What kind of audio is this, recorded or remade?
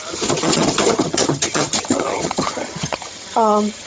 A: remade